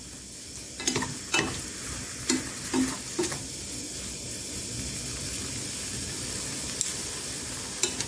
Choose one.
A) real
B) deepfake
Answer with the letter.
A